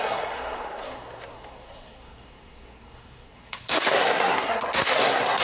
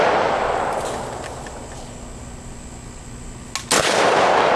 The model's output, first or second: first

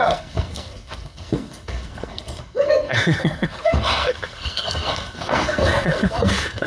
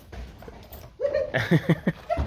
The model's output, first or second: first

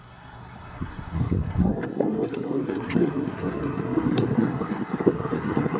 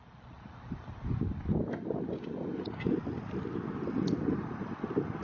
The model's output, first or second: first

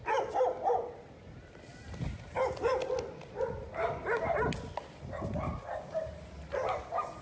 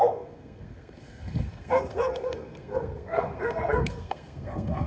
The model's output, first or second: second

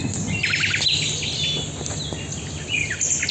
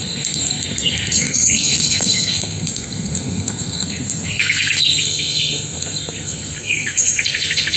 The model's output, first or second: second